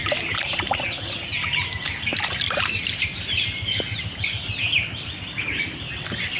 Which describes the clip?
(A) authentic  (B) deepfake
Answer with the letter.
A